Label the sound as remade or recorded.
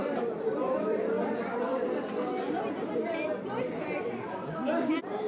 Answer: remade